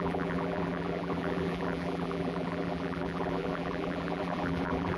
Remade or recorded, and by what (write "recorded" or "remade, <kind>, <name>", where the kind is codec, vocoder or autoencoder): remade, vocoder, BigVGAN v2